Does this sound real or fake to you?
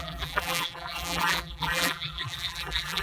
fake